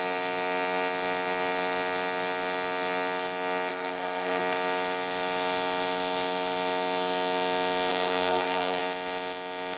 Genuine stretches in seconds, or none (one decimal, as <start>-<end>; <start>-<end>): 0.0-3.7; 4.4-7.9; 8.8-9.8